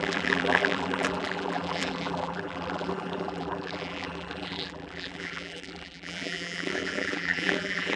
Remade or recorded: remade